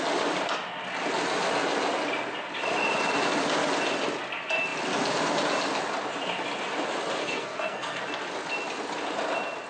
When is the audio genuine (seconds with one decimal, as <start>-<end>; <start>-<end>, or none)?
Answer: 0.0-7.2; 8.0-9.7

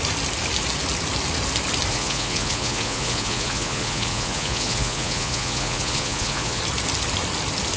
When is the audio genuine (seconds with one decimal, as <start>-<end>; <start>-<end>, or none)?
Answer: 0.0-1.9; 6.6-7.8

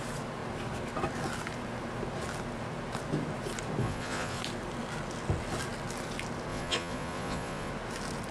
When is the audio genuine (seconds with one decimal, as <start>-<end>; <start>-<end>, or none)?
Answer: 0.0-3.8; 4.4-6.5; 7.7-8.3

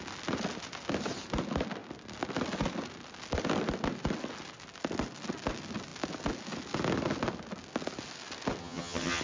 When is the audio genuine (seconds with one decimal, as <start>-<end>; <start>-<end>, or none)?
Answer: 0.0-8.6